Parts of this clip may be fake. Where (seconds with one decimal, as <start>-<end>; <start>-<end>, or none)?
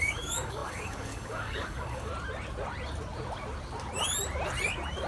0.0-2.1